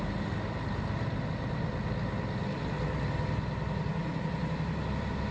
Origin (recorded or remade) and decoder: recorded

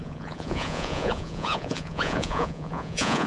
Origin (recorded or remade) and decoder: remade, vocoder, Vocos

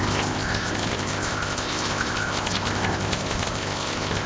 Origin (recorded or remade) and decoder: remade, codec, ZipCodec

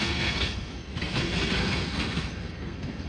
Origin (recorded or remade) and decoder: remade, codec, SNAC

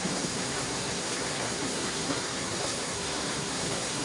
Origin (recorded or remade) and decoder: remade, codec, SNAC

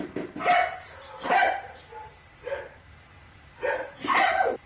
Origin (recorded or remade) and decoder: recorded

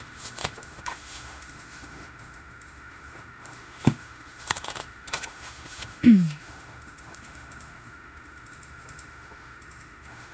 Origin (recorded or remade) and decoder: remade, autoencoder, DAC-VAE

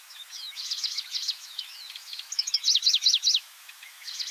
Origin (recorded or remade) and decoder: remade, autoencoder, DAC-VAE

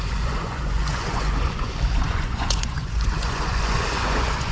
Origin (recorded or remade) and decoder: remade, vocoder, Vocos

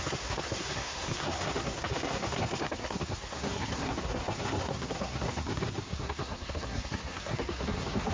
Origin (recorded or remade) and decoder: remade, codec, SNAC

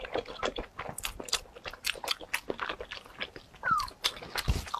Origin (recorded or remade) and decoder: recorded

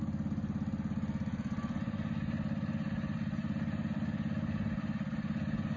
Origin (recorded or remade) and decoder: recorded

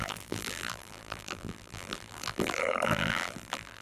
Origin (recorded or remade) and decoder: remade, vocoder, BigVGAN v2